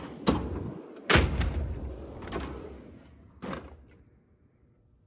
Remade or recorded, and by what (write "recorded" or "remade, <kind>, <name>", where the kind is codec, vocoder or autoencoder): recorded